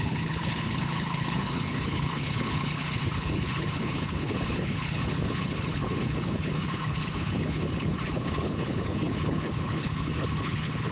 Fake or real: fake